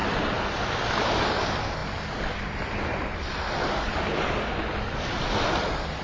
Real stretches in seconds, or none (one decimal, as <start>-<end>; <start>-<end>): 0.0-6.0